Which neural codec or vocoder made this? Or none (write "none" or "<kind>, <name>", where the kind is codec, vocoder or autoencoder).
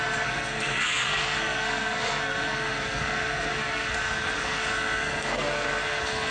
codec, SNAC